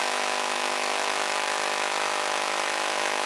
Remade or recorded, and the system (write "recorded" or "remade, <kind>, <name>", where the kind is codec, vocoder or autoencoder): remade, autoencoder, DAC-VAE